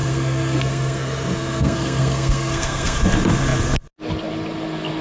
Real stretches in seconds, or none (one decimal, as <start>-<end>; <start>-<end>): 3.0-5.0